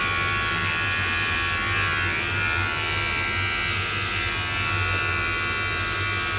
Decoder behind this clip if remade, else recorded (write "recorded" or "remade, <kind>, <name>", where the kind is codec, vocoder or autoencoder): recorded